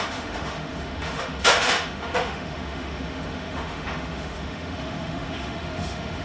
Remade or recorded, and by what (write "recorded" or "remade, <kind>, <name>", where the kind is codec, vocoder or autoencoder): remade, autoencoder, DAC-VAE